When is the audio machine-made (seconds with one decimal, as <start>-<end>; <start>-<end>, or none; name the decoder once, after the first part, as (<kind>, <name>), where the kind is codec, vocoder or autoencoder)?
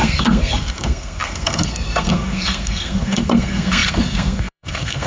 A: 0.0-5.1 (codec, SNAC)